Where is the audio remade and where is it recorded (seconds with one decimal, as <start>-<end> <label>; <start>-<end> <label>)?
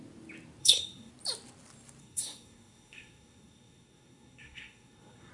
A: 0.0-0.6 recorded; 0.6-1.1 remade; 1.1-2.0 recorded; 2.0-5.3 remade